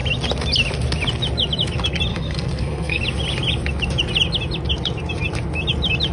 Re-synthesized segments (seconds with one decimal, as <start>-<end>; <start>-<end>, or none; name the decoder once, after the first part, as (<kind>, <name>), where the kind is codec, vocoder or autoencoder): 2.1-3.0 (codec, SNAC)